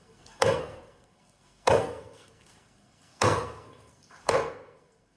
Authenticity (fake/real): fake